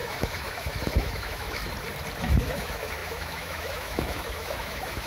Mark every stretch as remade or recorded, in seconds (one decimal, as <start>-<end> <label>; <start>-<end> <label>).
0.0-1.6 remade; 1.6-2.2 recorded; 2.2-5.1 remade